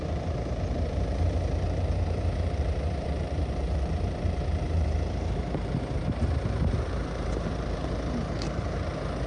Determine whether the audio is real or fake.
fake